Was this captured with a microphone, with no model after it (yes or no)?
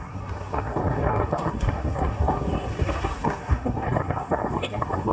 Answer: no